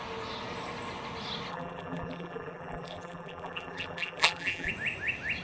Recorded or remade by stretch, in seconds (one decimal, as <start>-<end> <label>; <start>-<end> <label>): 0.0-1.5 recorded; 1.5-4.7 remade; 4.7-5.4 recorded